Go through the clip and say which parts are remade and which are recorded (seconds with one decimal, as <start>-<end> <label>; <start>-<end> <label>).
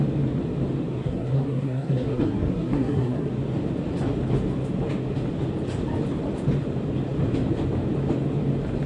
0.0-0.9 recorded; 0.9-3.3 remade; 3.3-8.9 recorded